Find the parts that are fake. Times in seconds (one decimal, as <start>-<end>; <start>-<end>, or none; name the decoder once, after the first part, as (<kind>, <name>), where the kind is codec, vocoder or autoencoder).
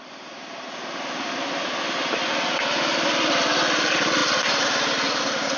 none